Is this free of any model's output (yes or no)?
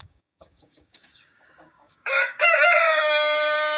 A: no